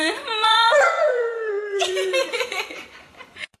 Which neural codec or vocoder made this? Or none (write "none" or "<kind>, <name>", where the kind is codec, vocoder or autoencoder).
vocoder, Vocos